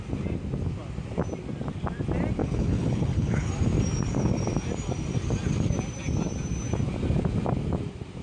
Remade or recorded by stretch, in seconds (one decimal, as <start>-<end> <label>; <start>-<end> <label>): 0.0-2.4 recorded; 2.4-3.5 remade; 3.5-8.2 recorded